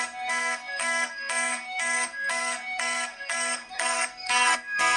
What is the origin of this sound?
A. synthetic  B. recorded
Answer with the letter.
A